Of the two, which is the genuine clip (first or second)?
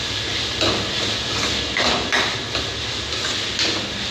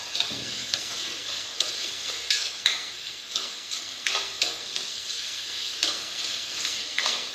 first